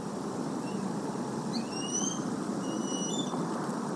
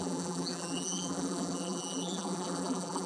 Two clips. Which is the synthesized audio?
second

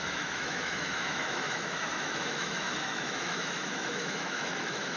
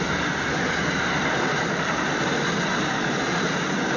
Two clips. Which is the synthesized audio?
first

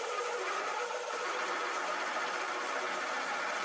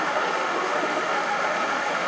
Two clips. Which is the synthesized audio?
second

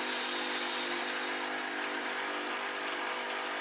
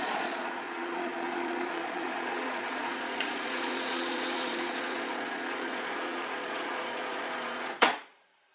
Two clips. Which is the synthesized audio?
second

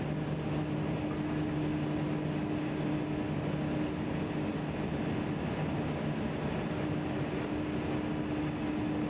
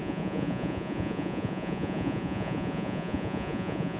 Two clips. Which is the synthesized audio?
second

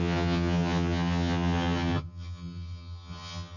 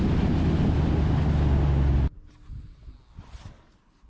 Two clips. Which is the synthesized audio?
first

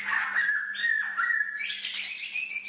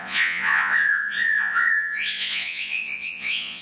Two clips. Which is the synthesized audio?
second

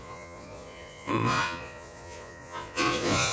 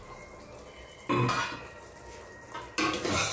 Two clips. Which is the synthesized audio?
first